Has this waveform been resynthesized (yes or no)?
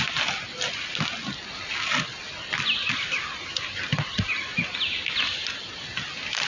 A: no